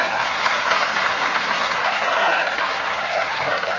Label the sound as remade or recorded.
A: remade